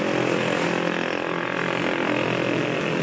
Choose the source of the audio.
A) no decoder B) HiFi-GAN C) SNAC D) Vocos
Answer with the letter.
A